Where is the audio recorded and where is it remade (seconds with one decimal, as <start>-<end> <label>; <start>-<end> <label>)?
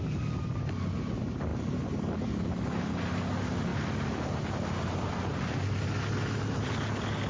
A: 0.0-7.3 recorded